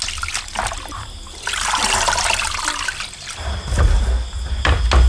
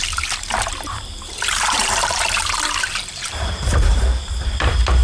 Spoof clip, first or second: second